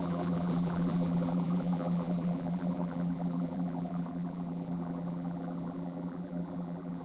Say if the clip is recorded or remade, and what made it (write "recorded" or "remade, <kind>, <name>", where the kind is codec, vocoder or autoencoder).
remade, vocoder, BigVGAN v2